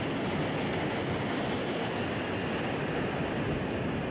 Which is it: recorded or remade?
recorded